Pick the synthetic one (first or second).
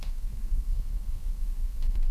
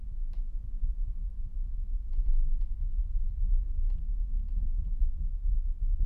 first